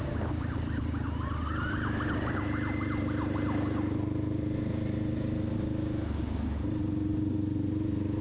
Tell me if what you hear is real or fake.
real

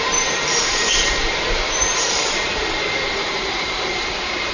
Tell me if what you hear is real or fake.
fake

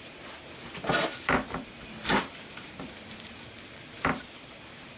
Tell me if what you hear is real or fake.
fake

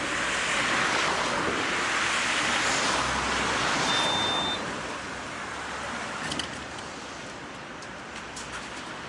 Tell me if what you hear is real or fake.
real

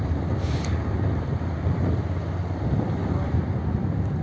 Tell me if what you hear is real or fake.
real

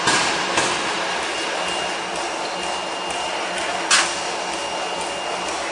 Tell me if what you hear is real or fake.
real